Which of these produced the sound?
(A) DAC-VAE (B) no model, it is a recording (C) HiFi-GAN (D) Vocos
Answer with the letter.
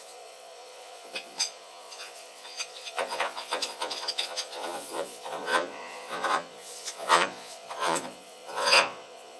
D